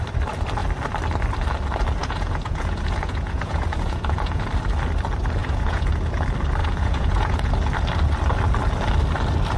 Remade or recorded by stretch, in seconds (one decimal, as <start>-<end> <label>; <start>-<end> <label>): 0.0-2.0 recorded; 2.0-4.5 remade; 4.5-5.4 recorded; 5.4-5.9 remade; 5.9-6.6 recorded; 6.6-7.5 remade; 7.5-9.6 recorded